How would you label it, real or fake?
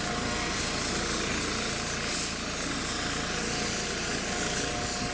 real